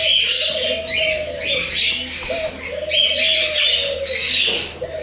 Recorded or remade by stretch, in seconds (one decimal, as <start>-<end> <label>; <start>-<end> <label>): 0.0-5.0 recorded